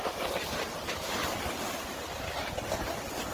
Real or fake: real